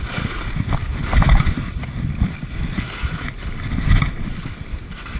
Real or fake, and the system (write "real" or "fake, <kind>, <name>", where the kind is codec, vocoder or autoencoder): real